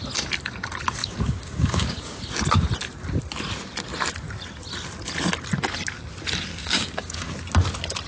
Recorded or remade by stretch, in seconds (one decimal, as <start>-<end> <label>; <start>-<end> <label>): 0.0-1.0 recorded; 1.0-2.2 remade; 2.2-6.6 recorded; 6.6-7.3 remade; 7.3-8.1 recorded